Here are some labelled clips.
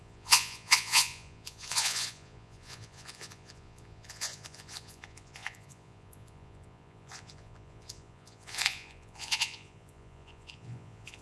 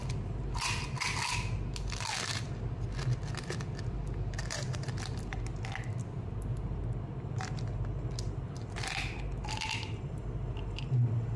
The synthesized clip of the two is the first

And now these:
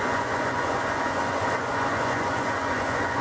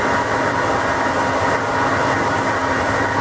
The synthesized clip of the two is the first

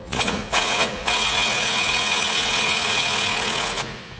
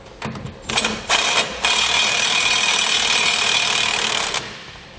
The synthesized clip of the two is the first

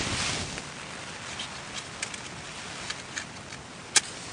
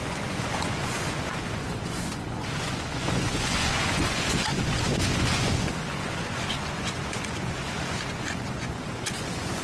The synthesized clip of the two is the second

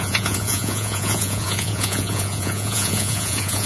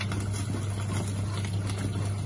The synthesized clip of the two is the first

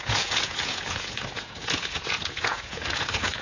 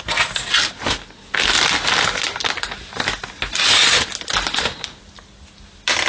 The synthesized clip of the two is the first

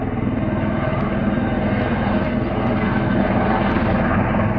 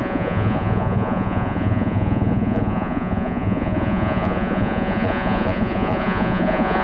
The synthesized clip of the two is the second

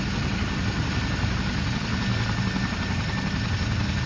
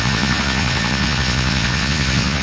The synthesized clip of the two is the second